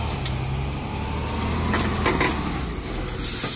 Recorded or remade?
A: recorded